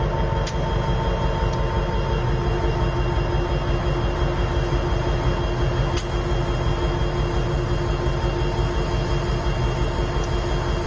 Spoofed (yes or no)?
no